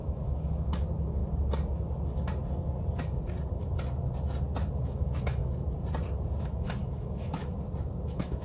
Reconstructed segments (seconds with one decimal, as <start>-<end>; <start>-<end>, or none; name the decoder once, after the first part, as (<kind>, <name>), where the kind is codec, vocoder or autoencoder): 0.0-1.2 (autoencoder, DAC-VAE); 4.7-5.4; 6.4-7.4; 8.0-8.4